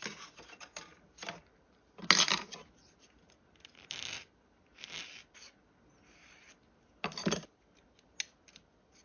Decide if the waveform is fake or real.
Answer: real